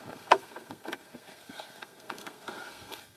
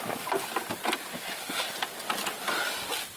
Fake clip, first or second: first